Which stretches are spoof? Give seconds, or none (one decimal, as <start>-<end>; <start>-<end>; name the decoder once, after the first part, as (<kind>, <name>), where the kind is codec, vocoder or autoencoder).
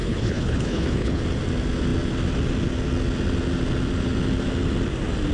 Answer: 0.0-1.2 (codec, HILCodec)